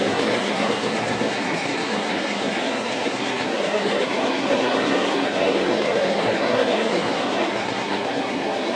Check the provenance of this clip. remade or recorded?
remade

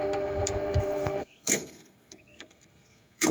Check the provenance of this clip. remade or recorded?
remade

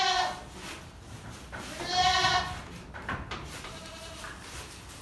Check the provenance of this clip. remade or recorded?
recorded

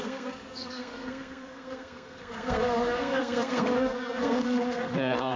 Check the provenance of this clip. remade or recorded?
remade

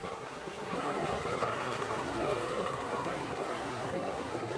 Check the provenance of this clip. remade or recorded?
remade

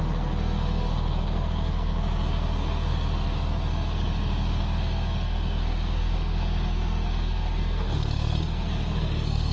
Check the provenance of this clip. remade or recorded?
remade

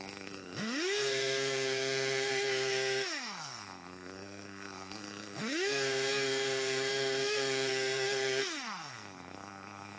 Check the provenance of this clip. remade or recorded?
remade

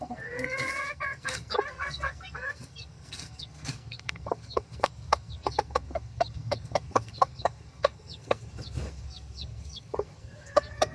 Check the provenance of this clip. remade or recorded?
remade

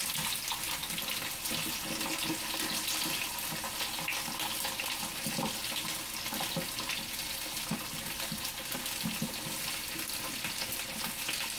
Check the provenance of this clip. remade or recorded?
recorded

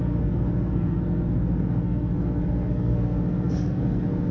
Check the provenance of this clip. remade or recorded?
remade